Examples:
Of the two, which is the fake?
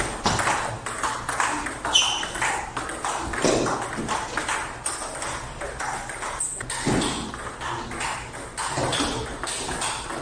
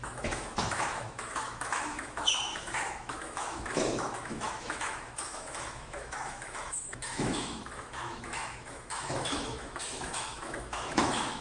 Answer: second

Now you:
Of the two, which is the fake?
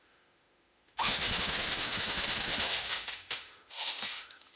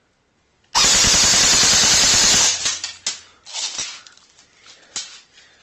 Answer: first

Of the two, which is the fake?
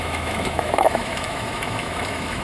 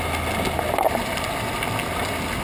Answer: first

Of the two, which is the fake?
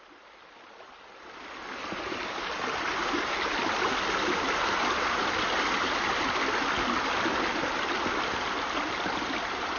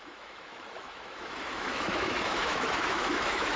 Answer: second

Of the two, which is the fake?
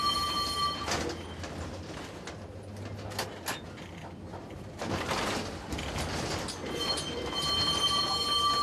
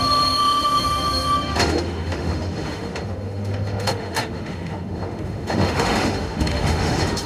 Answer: second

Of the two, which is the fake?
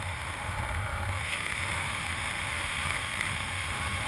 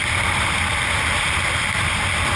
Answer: first